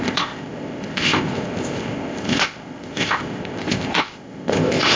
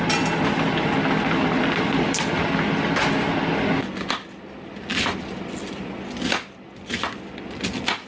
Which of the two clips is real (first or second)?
second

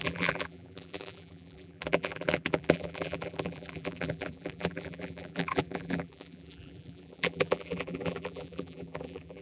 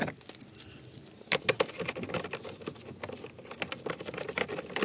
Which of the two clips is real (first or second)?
second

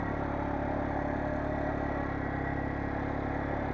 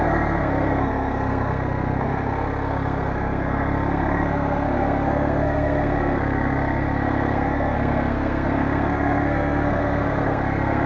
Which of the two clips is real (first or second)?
first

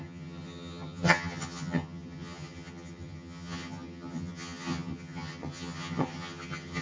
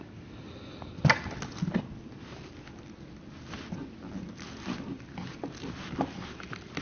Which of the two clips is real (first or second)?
second